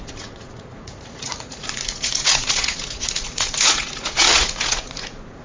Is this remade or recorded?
remade